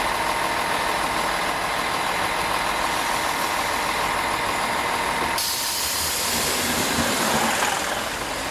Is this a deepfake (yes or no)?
no